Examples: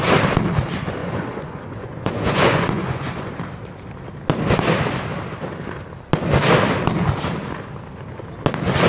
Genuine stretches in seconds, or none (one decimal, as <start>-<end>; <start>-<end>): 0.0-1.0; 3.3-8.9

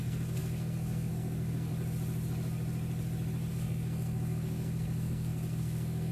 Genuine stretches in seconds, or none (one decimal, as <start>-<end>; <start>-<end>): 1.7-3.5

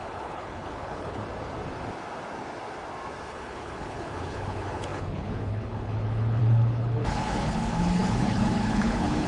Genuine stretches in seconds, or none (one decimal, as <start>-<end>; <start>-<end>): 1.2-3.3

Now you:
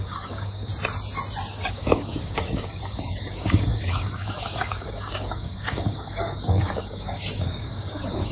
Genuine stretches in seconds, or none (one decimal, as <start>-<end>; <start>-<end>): 0.7-1.5

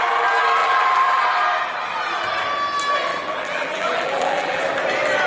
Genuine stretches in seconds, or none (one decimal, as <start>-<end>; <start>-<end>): 0.0-0.6; 1.2-3.1; 4.6-5.3

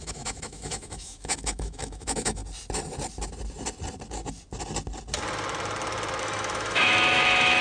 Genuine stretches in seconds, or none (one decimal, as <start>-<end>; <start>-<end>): 2.4-6.2

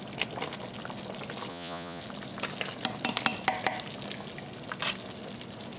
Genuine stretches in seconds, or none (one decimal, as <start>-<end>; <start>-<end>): 0.0-1.5; 2.0-5.8

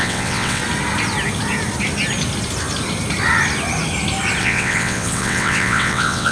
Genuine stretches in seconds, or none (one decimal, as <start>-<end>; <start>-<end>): 0.6-4.4